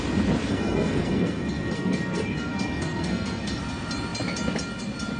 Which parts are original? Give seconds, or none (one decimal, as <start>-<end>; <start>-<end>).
0.0-0.5; 3.6-5.2